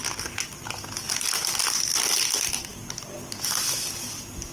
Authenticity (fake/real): real